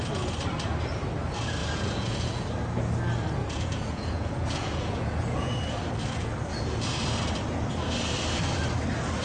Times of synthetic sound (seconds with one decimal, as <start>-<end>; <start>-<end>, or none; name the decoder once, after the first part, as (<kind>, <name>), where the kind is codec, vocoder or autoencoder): 1.6-2.5 (vocoder, Vocos); 3.4-5.6